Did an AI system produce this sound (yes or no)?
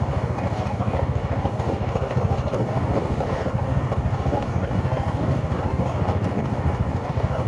yes